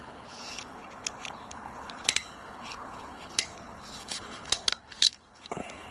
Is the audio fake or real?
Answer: fake